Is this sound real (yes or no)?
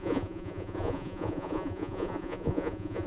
no